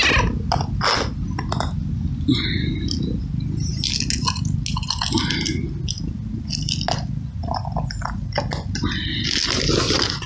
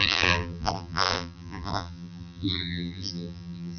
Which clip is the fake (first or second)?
second